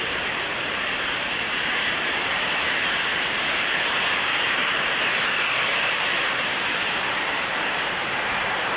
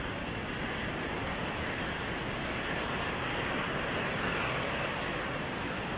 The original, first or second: second